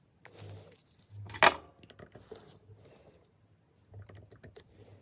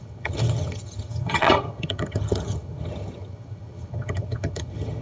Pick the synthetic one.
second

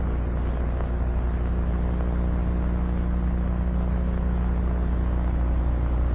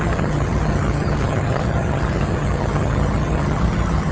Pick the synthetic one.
second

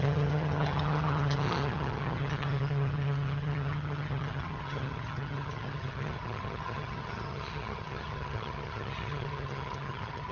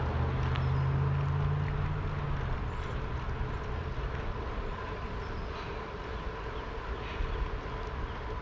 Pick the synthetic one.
first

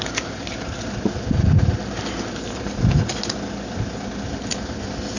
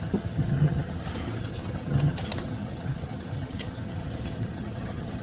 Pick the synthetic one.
second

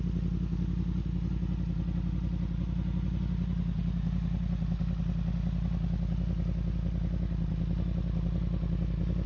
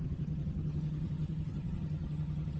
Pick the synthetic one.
second